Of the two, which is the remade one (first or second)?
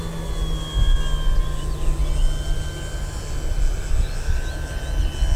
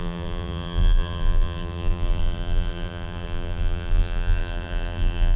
second